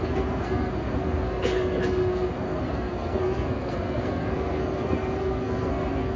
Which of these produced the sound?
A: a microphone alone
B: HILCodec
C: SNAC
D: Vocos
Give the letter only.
C